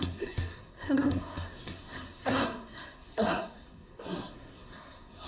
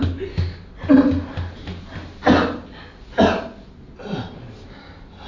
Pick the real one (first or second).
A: second